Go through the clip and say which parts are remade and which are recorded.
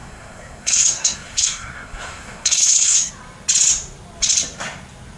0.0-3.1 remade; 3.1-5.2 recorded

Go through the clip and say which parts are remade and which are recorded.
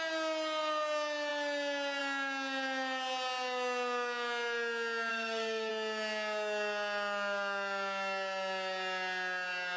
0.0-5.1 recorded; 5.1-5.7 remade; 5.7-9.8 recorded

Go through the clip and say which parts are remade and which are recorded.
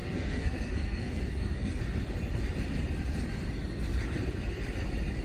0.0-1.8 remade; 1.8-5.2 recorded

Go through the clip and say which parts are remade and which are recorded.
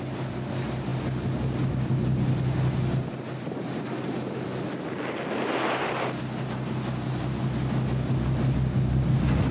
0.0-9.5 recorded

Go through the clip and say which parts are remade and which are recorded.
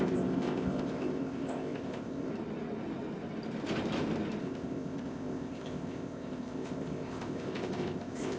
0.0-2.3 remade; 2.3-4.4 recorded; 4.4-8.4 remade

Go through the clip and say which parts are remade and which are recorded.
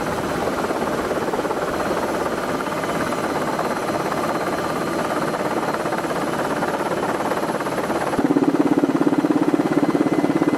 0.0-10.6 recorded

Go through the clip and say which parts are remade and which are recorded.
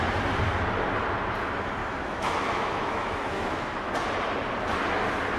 0.0-1.8 recorded; 1.8-3.9 remade; 3.9-5.4 recorded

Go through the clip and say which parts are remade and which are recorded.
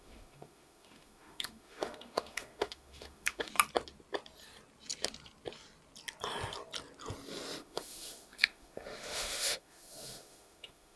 0.0-3.5 remade; 3.5-7.6 recorded; 7.6-11.0 remade